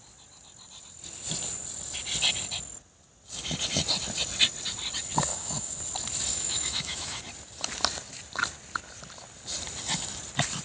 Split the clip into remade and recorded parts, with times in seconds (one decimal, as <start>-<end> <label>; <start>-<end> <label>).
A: 0.0-5.3 recorded; 5.3-5.8 remade; 5.8-6.3 recorded; 6.3-7.2 remade; 7.2-10.6 recorded